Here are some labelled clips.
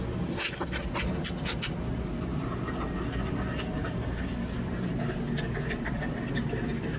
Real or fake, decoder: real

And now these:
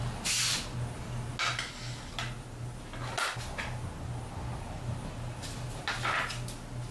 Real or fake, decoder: real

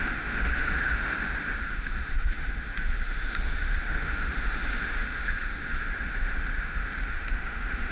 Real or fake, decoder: fake, autoencoder, DAC-VAE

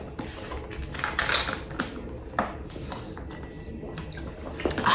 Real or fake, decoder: real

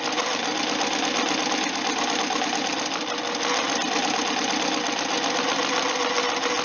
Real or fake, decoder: real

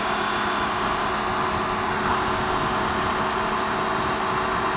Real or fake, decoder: real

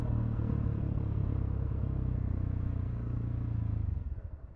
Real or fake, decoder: fake, codec, SNAC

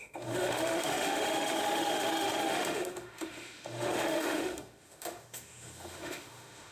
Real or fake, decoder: fake, autoencoder, DAC-VAE